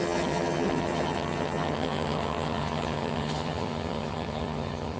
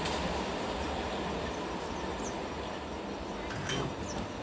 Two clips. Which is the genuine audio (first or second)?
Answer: second